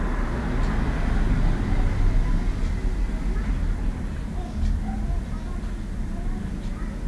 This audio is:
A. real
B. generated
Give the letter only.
A